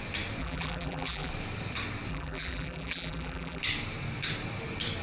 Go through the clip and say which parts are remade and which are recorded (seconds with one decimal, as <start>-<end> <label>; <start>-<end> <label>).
0.0-0.4 recorded; 0.4-1.3 remade; 1.3-2.1 recorded; 2.1-3.6 remade; 3.6-5.0 recorded